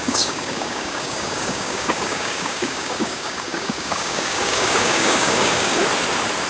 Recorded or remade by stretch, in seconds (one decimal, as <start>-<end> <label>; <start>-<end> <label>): 0.0-5.8 remade; 5.8-6.5 recorded